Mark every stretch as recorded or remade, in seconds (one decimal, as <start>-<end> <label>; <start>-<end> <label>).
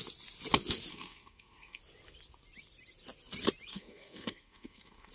0.0-0.9 recorded; 0.9-1.8 remade; 1.8-3.7 recorded; 3.7-5.1 remade